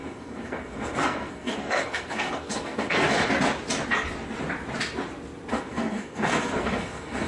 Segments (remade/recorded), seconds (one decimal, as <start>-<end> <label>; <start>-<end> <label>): 0.0-3.0 remade; 3.0-5.5 recorded; 5.5-7.3 remade